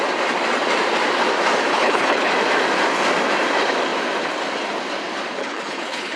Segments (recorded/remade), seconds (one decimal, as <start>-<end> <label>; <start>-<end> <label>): 0.0-1.7 recorded; 1.7-2.3 remade; 2.3-5.4 recorded; 5.4-6.2 remade